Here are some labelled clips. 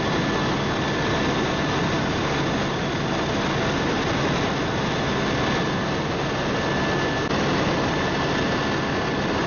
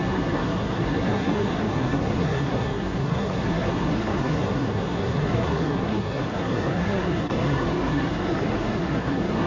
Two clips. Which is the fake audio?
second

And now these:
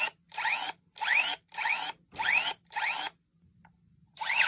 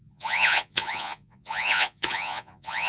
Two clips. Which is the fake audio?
second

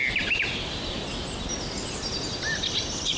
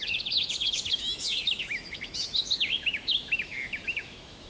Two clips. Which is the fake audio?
second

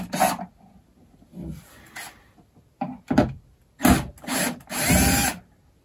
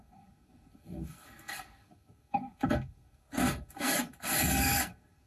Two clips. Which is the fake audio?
second